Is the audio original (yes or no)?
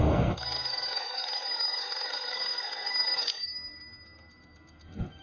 no